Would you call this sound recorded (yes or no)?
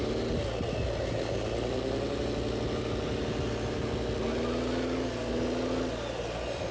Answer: yes